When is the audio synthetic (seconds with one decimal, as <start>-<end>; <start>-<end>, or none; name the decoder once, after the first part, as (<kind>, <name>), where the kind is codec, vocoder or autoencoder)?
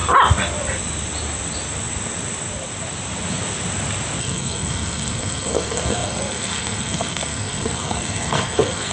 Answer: 4.2-8.9 (codec, SNAC)